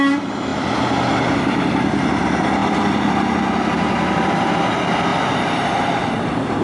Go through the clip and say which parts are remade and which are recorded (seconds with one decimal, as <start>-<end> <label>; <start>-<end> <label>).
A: 0.0-0.5 remade; 0.5-1.4 recorded; 1.4-6.6 remade